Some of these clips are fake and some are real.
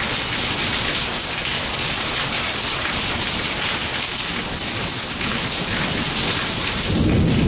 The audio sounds real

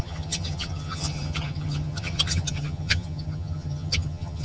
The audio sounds fake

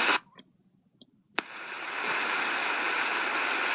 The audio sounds real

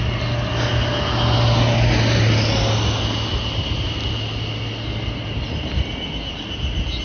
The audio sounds real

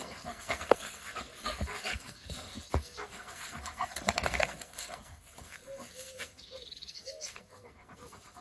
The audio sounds fake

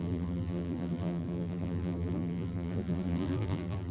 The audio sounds fake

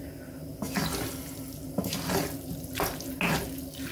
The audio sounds real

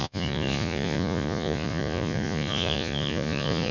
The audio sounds fake